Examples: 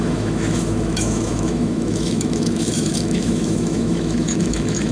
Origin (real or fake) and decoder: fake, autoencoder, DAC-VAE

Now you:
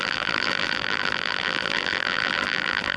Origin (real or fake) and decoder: fake, vocoder, BigVGAN v2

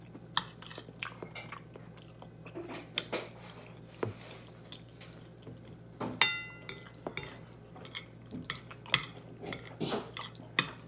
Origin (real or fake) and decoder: real